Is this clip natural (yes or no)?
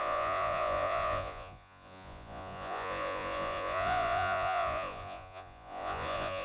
no